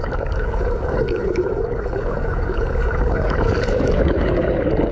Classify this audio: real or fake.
fake